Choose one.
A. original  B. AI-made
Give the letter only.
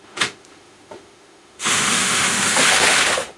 B